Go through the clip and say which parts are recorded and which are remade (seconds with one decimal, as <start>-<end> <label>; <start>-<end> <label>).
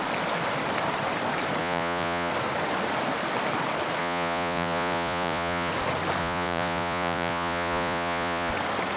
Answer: 0.0-1.6 recorded; 1.6-2.3 remade; 2.3-4.0 recorded; 4.0-5.7 remade; 5.7-6.2 recorded; 6.2-8.5 remade; 8.5-9.0 recorded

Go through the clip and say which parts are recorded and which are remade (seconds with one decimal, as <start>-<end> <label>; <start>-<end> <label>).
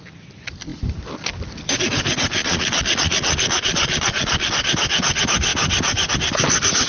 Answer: 0.0-2.4 recorded; 2.4-4.5 remade; 4.5-6.9 recorded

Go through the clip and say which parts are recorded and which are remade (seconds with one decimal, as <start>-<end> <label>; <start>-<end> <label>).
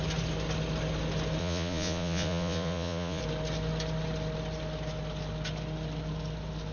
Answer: 0.0-1.4 recorded; 1.4-3.2 remade; 3.2-6.7 recorded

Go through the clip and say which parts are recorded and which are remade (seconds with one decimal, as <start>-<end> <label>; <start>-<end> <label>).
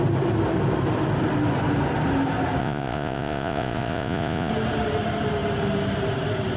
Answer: 0.0-2.6 recorded; 2.6-4.5 remade; 4.5-6.6 recorded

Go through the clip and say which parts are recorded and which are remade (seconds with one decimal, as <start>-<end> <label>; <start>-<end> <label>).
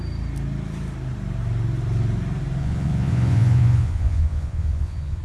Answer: 0.0-2.6 recorded; 2.6-5.2 remade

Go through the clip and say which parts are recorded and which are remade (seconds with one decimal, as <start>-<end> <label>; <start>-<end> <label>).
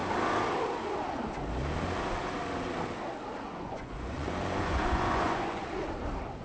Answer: 0.0-3.4 recorded; 3.4-5.6 remade; 5.6-6.4 recorded